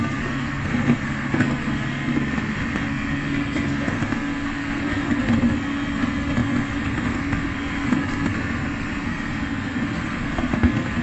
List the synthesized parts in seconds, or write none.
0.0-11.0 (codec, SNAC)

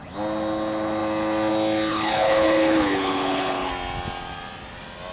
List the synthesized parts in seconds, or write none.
1.9-3.7 (codec, HILCodec)

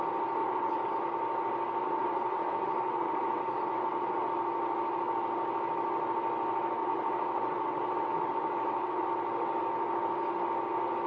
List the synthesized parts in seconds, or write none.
0.4-1.1 (vocoder, WaveNeXt); 1.8-4.3; 6.8-9.1

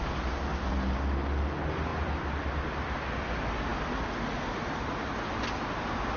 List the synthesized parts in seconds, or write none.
none

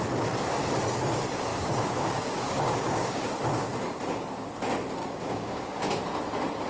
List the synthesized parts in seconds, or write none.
1.5-3.3 (codec, DAC); 5.0-6.0